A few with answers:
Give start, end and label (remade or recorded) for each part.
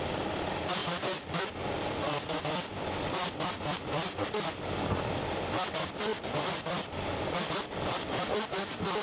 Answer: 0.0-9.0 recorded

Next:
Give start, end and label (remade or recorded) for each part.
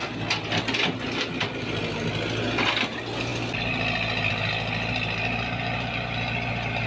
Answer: 0.0-6.9 recorded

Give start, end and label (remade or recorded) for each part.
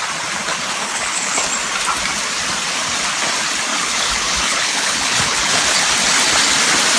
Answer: 0.0-0.5 recorded; 0.5-1.4 remade; 1.4-3.7 recorded; 3.7-5.8 remade; 5.8-7.0 recorded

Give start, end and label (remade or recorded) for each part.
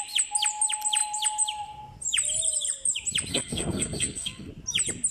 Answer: 0.0-3.3 recorded; 3.3-4.5 remade; 4.5-5.1 recorded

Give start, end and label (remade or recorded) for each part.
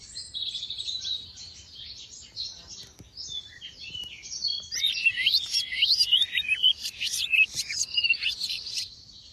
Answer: 0.0-2.8 remade; 2.8-3.4 recorded; 3.4-4.5 remade; 4.5-5.1 recorded; 5.1-9.3 remade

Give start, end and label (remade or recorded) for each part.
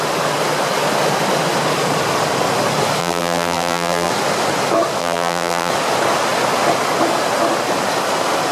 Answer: 0.0-3.0 recorded; 3.0-4.1 remade; 4.1-5.0 recorded; 5.0-5.7 remade; 5.7-8.5 recorded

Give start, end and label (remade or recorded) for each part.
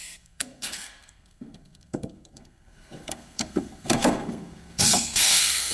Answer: 0.0-5.7 remade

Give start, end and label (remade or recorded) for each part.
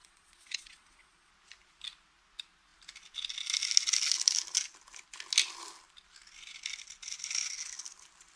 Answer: 0.0-1.3 remade; 1.3-8.4 recorded